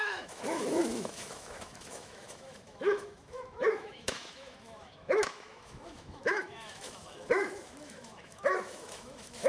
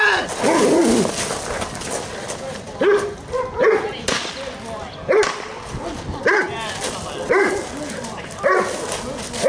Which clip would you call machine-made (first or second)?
first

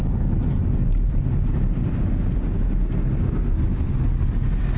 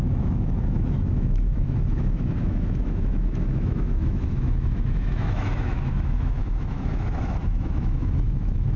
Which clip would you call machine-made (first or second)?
second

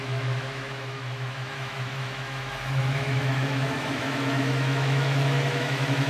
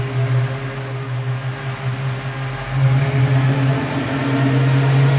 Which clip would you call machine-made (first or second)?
first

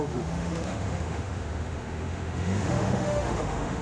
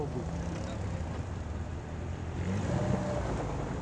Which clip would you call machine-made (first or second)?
first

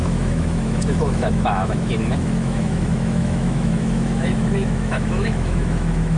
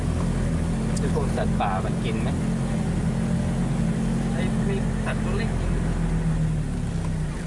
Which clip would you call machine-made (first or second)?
first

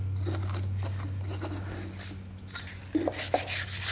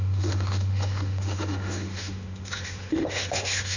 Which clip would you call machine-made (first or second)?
second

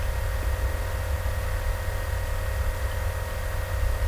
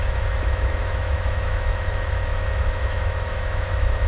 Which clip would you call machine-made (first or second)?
second